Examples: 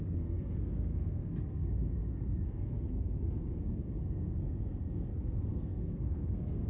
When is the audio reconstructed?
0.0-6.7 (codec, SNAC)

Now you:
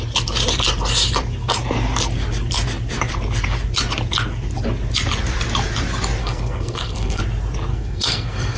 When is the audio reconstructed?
6.2-7.2 (codec, SNAC); 7.7-8.6

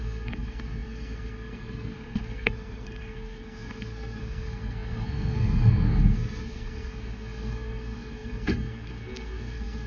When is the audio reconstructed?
0.0-9.9 (codec, SNAC)

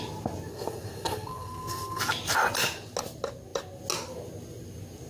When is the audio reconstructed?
0.5-2.0 (codec, SNAC)

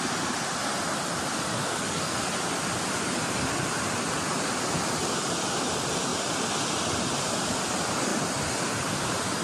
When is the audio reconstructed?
1.7-2.2 (codec, SNAC)